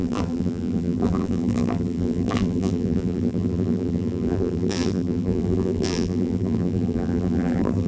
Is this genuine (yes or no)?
no